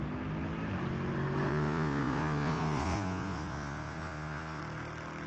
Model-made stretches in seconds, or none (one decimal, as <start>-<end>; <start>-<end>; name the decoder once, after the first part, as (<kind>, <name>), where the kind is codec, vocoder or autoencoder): 1.5-4.6 (vocoder, Vocos)